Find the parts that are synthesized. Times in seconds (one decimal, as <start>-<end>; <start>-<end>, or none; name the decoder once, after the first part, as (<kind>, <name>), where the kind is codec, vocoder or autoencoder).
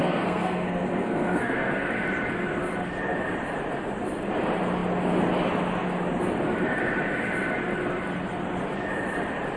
0.0-1.9 (codec, SNAC)